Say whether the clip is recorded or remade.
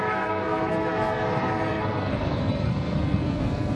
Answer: remade